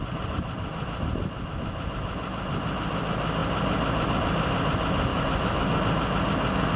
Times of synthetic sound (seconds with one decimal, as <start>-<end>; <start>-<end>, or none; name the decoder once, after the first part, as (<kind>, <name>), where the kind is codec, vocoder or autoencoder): 5.1-5.8 (autoencoder, DAC-VAE)